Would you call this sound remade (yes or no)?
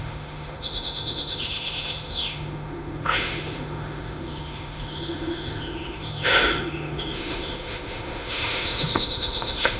yes